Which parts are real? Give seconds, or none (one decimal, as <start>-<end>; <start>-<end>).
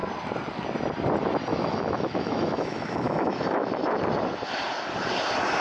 0.0-1.5; 3.7-5.6